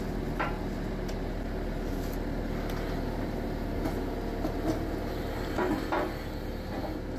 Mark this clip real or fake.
real